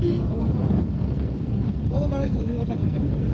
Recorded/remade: remade